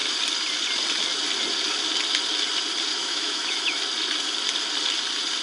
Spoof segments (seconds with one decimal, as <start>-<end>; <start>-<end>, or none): 2.9-3.8